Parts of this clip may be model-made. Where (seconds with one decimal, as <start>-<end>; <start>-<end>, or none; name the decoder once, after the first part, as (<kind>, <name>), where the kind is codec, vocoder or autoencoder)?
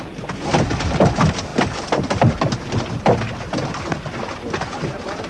none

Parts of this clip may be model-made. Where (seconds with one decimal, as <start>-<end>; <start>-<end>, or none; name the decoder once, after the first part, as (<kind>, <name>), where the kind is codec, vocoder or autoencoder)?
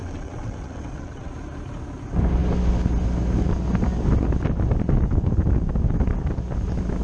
0.0-1.3 (vocoder, WaveNeXt)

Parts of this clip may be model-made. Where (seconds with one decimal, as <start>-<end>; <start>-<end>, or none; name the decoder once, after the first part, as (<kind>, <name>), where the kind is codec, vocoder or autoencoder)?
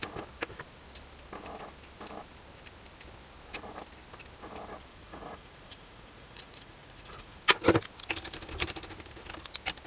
4.9-7.4 (vocoder, Vocos)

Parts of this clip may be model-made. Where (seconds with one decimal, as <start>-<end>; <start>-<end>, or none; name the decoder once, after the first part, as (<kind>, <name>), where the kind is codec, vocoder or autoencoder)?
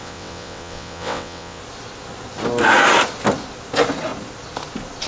0.0-1.6 (vocoder, WaveNeXt)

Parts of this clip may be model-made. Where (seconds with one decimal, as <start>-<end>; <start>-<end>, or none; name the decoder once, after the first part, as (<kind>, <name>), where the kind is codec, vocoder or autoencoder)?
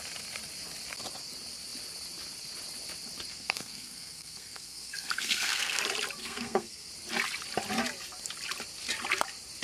3.3-5.8 (codec, SNAC); 6.2-6.9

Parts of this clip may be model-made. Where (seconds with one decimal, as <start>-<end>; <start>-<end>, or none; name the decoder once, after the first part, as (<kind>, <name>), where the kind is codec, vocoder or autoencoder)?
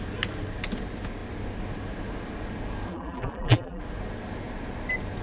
2.9-3.8 (vocoder, BigVGAN v2)